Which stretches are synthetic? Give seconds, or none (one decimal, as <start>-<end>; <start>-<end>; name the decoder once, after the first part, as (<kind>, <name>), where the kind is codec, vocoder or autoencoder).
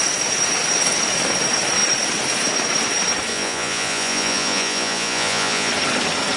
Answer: 3.3-5.7 (vocoder, Vocos)